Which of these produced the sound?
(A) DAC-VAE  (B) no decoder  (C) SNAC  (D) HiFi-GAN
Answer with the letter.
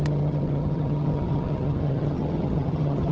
D